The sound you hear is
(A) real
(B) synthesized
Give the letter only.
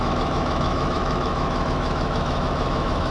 B